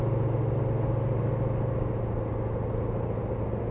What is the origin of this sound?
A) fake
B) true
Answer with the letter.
B